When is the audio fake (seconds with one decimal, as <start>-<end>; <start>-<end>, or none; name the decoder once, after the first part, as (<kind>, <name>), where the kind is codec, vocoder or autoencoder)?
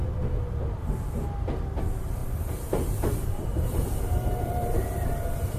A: 1.8-5.6 (vocoder, BigVGAN v2)